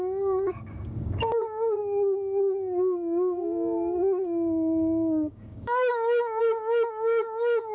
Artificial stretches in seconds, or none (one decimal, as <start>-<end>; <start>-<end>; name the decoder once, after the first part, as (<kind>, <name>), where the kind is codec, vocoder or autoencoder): 0.0-7.7 (codec, DAC)